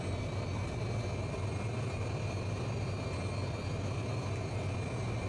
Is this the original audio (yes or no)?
yes